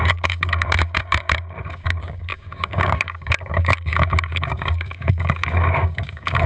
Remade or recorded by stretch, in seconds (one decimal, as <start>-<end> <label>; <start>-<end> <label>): 0.0-6.5 remade